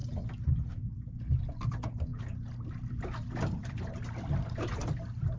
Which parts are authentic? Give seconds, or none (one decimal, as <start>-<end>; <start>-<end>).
0.0-5.4